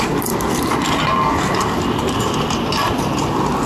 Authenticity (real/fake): real